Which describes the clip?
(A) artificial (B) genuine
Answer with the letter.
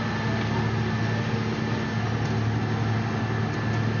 B